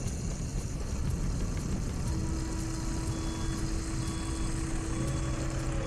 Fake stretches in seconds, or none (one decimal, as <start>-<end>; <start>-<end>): 0.5-1.7